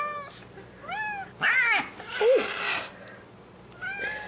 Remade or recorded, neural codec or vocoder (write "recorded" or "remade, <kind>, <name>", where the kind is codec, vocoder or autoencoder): recorded